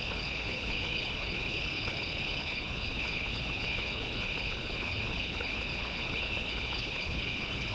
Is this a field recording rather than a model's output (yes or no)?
no